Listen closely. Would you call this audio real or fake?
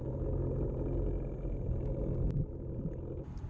real